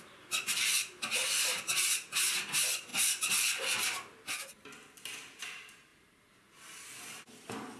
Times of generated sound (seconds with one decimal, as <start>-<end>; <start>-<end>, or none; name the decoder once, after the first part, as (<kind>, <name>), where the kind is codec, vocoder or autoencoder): 0.0-7.8 (vocoder, BigVGAN v2)